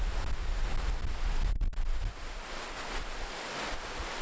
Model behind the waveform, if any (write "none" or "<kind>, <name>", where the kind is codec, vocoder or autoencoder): none